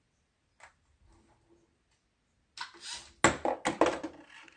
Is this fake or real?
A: real